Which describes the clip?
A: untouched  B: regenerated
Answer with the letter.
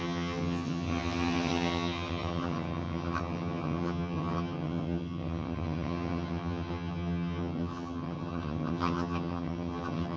B